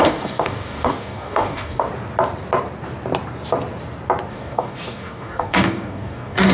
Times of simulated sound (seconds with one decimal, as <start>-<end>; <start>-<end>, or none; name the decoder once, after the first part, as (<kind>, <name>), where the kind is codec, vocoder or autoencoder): 0.0-1.9 (codec, DAC); 4.3-6.5